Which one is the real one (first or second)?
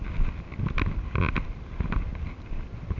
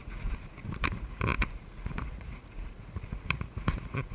first